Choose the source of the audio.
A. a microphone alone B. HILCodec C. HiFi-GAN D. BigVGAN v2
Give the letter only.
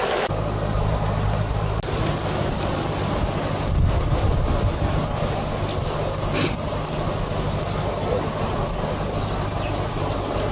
A